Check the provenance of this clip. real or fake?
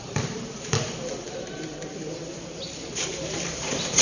fake